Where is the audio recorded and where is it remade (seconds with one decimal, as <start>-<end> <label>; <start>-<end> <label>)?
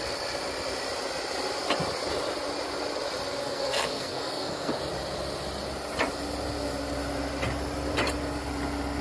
0.0-3.4 recorded; 3.4-4.8 remade; 4.8-9.0 recorded